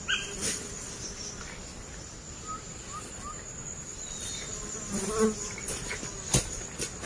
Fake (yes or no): no